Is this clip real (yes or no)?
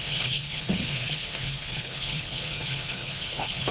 no